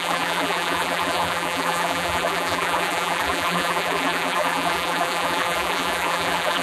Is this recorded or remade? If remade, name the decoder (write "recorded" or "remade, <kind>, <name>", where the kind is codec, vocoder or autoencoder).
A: remade, vocoder, BigVGAN v2